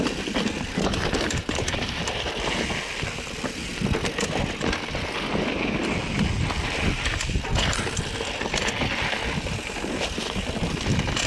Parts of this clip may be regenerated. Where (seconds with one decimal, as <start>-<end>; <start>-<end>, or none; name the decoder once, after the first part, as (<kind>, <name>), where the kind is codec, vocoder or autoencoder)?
none